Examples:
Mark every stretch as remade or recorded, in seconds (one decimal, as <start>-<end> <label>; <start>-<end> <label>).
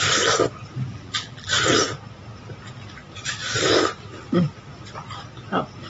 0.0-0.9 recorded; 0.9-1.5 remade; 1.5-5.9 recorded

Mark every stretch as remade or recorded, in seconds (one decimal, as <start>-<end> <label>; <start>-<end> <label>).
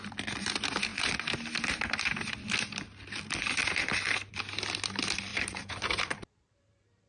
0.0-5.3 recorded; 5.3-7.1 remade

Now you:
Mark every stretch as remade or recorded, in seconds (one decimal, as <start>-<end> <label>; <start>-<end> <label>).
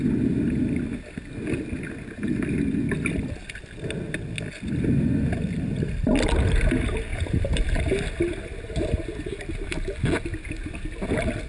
0.0-7.1 recorded; 7.1-7.8 remade; 7.8-11.5 recorded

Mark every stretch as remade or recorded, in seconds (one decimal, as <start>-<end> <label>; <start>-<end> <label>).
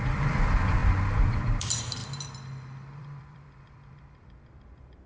0.0-2.0 remade; 2.0-3.0 recorded; 3.0-5.1 remade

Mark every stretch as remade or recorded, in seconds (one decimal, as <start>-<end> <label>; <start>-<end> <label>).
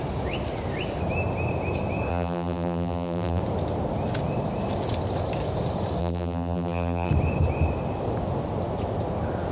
0.0-2.1 recorded; 2.1-3.4 remade; 3.4-6.0 recorded; 6.0-7.1 remade; 7.1-9.5 recorded